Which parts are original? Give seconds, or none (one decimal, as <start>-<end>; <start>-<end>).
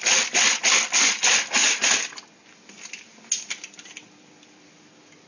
0.0-5.3